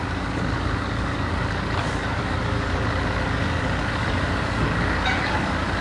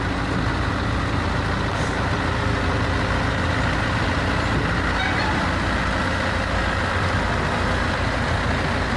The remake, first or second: first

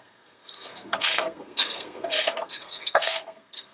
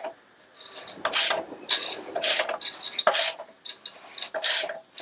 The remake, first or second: first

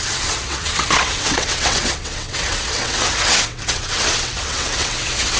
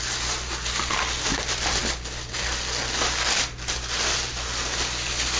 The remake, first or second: first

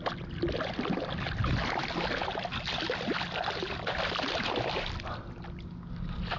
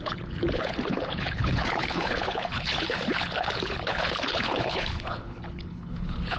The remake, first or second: second